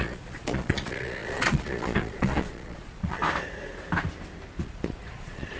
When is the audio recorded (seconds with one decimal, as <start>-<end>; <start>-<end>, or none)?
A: 3.2-4.6